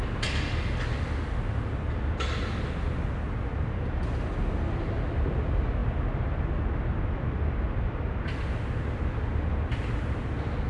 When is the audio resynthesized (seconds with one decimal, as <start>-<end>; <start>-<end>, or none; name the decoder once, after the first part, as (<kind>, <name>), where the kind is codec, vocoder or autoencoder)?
none